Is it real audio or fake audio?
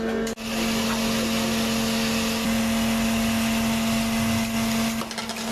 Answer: real